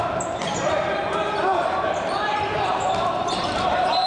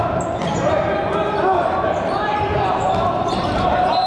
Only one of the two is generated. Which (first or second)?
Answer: first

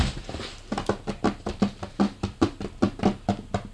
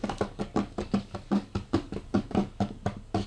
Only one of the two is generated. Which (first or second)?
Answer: second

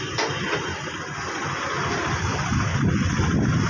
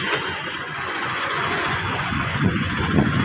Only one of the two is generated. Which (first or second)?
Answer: second